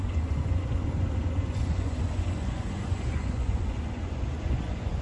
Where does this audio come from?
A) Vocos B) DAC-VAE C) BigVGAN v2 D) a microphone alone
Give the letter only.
A